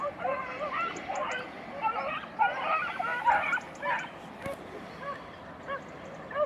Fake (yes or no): no